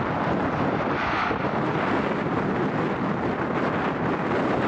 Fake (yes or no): no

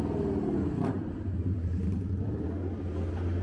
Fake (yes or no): no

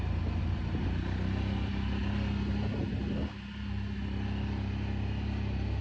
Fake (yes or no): no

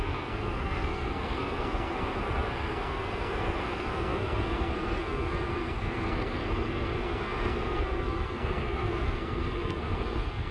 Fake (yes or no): yes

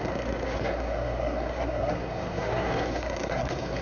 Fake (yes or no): yes